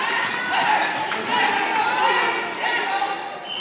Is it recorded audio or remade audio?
recorded